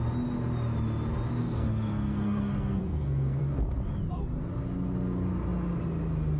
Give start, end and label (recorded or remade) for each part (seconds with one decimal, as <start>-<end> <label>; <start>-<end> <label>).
0.0-1.4 recorded; 1.4-3.4 remade; 3.4-6.4 recorded